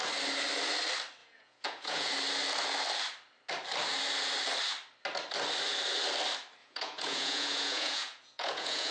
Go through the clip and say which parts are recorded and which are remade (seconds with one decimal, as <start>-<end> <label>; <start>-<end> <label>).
0.0-1.2 recorded; 1.2-2.1 remade; 2.1-6.6 recorded; 6.6-8.9 remade